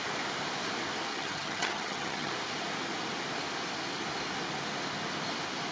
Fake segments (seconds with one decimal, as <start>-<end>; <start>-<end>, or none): 1.1-2.3